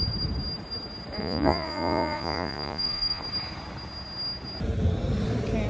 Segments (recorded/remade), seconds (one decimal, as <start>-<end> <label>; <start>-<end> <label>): 0.0-1.2 recorded; 1.2-3.2 remade; 3.2-5.7 recorded